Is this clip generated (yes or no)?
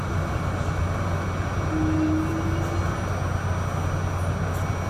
no